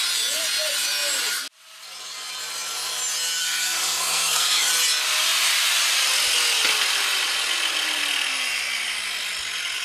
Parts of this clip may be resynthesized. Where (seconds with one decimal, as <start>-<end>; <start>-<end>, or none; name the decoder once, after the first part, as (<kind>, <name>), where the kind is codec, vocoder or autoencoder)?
3.4-4.7 (codec, SNAC)